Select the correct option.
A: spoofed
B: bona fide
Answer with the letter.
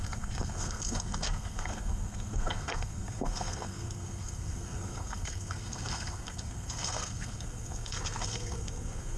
A